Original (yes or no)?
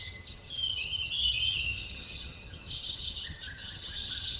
no